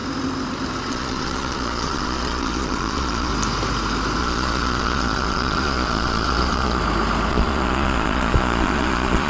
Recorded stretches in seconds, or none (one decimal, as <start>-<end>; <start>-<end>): 0.0-0.9; 3.3-4.2; 6.8-7.3